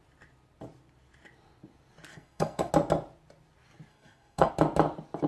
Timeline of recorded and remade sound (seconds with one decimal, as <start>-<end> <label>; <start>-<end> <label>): 0.0-2.1 recorded; 2.1-2.7 remade; 2.7-3.9 recorded; 3.9-4.5 remade; 4.5-5.3 recorded